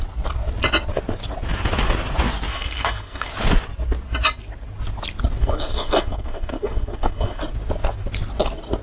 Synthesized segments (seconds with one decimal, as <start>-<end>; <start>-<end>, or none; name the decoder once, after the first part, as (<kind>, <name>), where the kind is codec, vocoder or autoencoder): 2.5-3.3 (codec, SNAC); 5.4-7.4

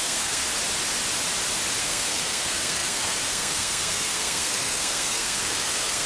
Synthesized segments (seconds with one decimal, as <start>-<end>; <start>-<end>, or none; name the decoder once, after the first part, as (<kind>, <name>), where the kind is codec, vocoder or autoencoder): 0.0-0.4 (codec, SNAC); 1.8-6.1